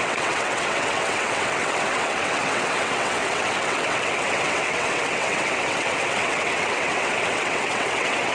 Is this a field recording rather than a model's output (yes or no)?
no